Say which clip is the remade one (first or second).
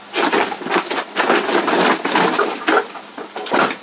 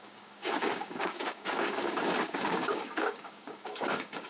second